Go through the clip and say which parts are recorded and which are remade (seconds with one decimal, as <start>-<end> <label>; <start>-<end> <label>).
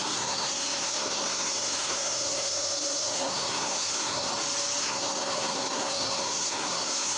0.0-4.3 remade; 4.3-4.8 recorded; 4.8-7.2 remade